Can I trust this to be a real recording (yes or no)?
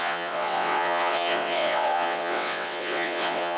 no